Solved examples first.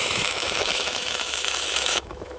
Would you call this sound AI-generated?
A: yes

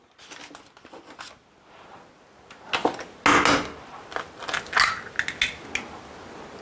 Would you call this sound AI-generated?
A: no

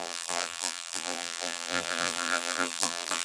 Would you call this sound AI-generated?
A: yes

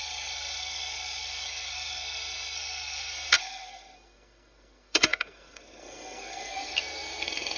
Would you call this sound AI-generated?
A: yes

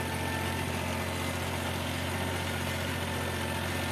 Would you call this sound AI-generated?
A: no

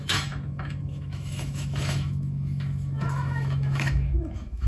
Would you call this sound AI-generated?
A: yes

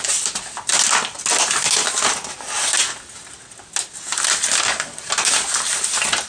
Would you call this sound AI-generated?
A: no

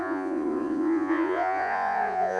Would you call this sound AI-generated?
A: yes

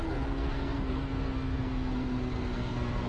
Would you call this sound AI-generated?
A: yes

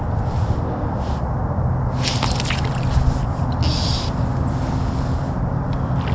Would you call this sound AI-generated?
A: no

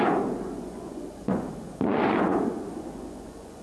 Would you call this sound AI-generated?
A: yes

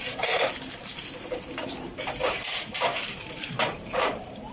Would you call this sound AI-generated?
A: yes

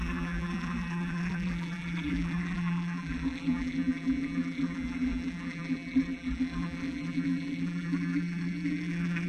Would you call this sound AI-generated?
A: yes